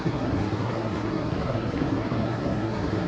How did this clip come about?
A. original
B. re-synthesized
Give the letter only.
B